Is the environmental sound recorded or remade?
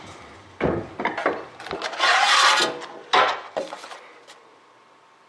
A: recorded